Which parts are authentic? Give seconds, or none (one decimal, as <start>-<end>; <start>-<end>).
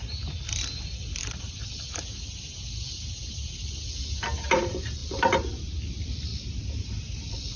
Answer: 0.0-7.6